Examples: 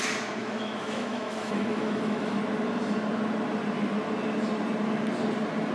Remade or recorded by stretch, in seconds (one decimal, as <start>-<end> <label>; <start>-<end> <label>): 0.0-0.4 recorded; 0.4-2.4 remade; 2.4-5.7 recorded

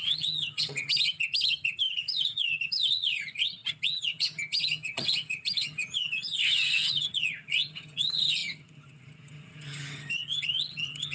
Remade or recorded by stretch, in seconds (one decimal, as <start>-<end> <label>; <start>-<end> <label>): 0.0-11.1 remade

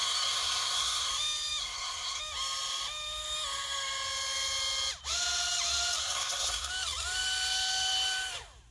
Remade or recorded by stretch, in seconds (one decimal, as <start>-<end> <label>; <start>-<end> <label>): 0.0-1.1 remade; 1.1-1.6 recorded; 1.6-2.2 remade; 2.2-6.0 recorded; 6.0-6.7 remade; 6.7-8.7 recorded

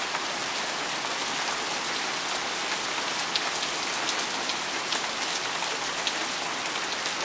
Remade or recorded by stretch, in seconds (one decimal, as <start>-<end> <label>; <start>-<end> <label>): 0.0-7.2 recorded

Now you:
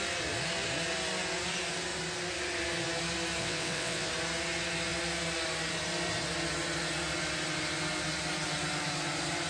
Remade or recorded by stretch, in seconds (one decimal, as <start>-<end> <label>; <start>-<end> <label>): 0.0-3.4 recorded; 3.4-4.1 remade; 4.1-9.5 recorded

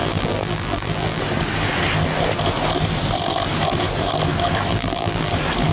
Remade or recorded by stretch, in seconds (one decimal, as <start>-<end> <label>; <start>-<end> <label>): 0.0-1.2 remade; 1.2-4.7 recorded; 4.7-5.3 remade; 5.3-5.7 recorded